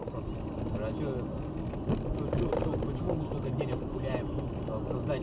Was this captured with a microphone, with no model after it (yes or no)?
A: yes